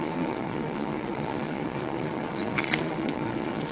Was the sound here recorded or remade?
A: remade